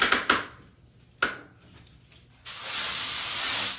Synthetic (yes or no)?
no